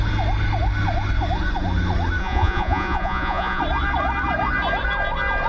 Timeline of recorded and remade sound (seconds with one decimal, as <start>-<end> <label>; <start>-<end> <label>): 0.0-2.2 recorded; 2.2-3.6 remade; 3.6-5.5 recorded

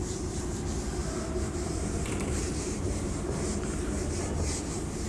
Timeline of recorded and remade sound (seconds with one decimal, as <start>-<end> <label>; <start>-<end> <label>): 0.0-1.0 recorded; 1.0-4.1 remade; 4.1-5.1 recorded